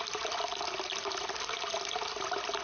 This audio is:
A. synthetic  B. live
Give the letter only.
B